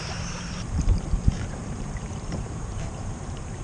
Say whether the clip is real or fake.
fake